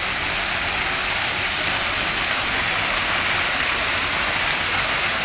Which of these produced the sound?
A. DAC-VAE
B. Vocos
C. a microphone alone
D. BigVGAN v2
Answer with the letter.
D